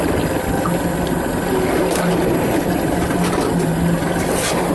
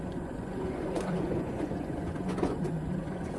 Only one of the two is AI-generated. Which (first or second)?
second